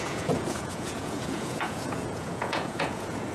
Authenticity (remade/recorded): remade